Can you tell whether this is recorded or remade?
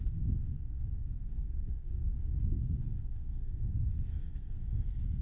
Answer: remade